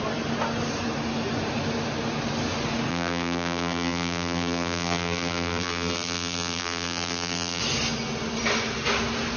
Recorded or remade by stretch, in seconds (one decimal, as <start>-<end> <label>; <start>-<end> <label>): 0.0-2.9 recorded; 2.9-7.6 remade; 7.6-9.4 recorded

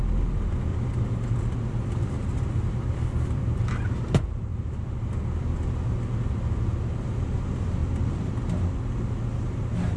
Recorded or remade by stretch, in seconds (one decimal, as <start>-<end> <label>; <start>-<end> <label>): 0.0-0.7 recorded; 0.7-5.0 remade; 5.0-10.0 recorded

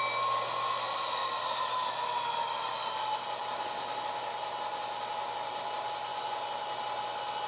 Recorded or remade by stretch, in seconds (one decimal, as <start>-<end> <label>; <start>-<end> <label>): 0.0-1.2 recorded; 1.2-1.9 remade; 1.9-6.1 recorded; 6.1-6.7 remade; 6.7-7.5 recorded

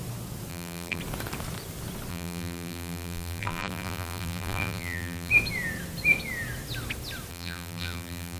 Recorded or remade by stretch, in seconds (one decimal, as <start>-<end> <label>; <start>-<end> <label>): 0.0-0.5 recorded; 0.5-1.0 remade; 1.0-2.1 recorded; 2.1-5.3 remade; 5.3-7.3 recorded; 7.3-8.4 remade